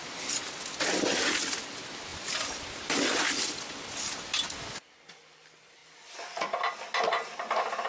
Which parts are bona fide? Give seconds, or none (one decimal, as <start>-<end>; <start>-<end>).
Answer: 0.0-7.9